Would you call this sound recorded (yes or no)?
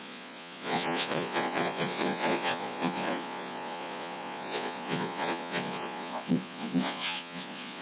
no